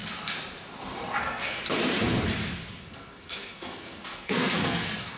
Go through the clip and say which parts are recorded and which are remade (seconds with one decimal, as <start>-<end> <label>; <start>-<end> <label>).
0.0-1.2 recorded; 1.2-1.6 remade; 1.6-2.8 recorded; 2.8-5.2 remade